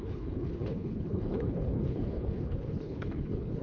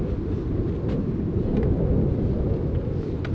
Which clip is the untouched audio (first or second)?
second